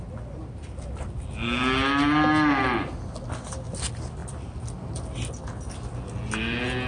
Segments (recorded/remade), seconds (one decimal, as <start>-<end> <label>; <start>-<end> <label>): 0.0-4.2 recorded; 4.2-4.9 remade; 4.9-6.9 recorded